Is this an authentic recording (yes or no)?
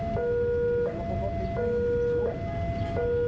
yes